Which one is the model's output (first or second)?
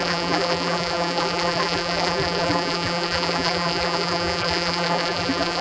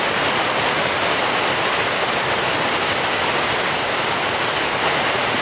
first